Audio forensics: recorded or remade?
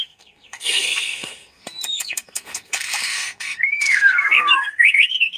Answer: remade